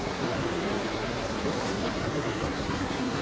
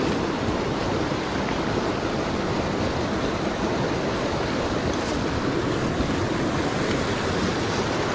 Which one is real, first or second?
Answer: second